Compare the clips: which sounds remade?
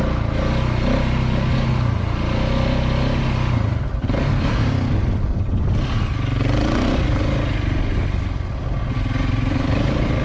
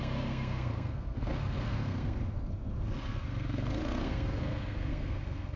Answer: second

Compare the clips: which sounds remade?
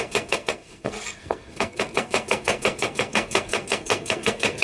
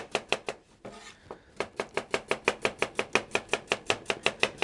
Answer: first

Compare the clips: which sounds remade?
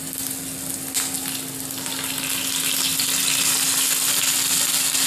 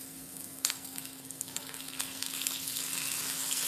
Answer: second